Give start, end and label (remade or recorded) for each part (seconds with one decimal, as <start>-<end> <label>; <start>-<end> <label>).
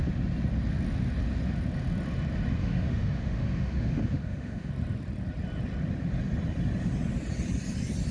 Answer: 0.0-2.6 recorded; 2.6-4.7 remade; 4.7-8.1 recorded